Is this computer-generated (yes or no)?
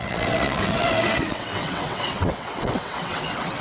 yes